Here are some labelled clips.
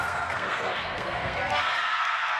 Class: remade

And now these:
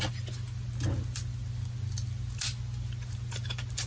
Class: recorded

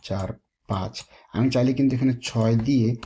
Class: recorded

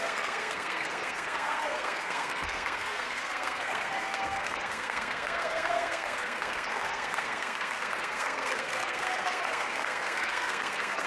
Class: remade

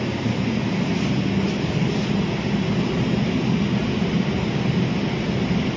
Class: recorded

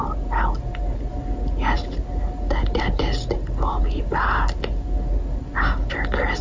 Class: recorded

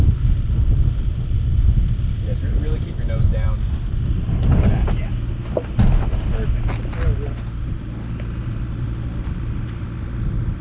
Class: recorded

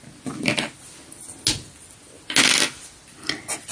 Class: recorded